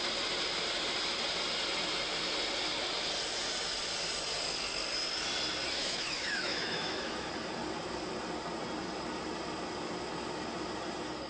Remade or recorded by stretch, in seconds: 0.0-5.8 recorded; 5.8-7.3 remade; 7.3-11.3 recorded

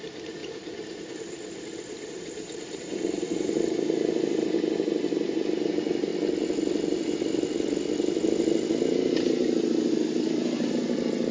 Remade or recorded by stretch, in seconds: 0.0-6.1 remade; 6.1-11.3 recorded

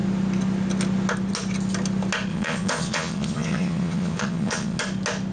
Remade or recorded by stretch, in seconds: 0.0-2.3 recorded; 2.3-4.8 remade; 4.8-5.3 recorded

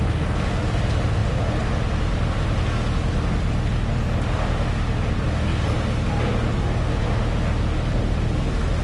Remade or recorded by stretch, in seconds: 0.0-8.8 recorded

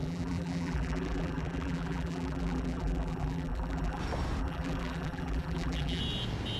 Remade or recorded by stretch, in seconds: 0.0-4.0 remade; 4.0-4.4 recorded; 4.4-6.0 remade; 6.0-6.6 recorded

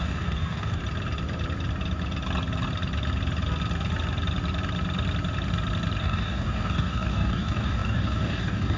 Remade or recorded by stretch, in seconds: 0.0-0.8 remade; 0.8-6.0 recorded; 6.0-8.8 remade

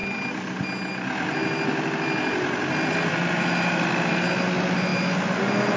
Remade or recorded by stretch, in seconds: 0.0-5.8 recorded

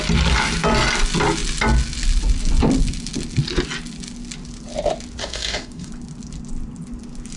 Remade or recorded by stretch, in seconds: 0.0-5.2 recorded; 5.2-5.9 remade; 5.9-7.4 recorded